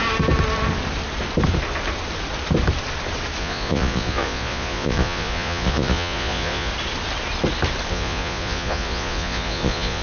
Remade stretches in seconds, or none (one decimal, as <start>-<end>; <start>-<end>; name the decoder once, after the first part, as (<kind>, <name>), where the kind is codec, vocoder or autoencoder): 3.4-6.7 (vocoder, Vocos); 7.9-10.0